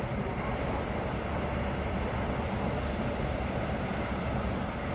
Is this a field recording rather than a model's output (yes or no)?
yes